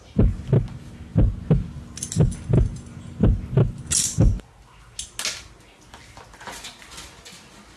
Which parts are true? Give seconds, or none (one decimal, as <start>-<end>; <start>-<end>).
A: 0.0-7.8